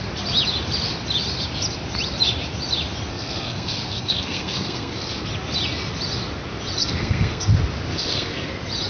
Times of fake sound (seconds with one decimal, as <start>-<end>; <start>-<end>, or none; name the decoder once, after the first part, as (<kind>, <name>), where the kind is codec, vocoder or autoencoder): 3.1-5.2 (codec, SNAC); 6.8-7.5; 7.9-8.5